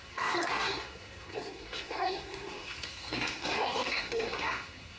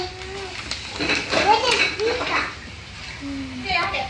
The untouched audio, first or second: second